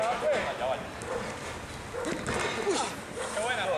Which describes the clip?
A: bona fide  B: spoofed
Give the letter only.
A